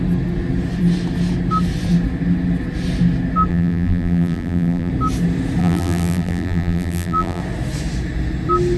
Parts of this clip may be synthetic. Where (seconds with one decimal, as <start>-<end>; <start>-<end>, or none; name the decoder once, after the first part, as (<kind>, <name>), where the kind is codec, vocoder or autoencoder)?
3.5-4.9 (vocoder, BigVGAN v2); 5.6-7.4